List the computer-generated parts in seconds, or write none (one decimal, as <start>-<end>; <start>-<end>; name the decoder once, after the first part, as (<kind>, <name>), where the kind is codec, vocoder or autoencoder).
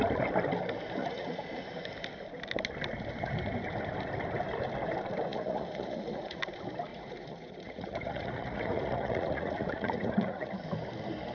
1.0-1.6 (vocoder, Vocos); 5.3-6.4; 6.9-10.5